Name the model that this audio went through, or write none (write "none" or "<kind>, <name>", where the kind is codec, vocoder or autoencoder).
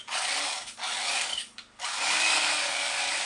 codec, DAC